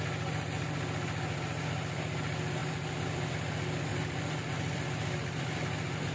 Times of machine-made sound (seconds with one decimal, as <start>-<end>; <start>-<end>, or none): 2.6-3.3; 3.9-5.6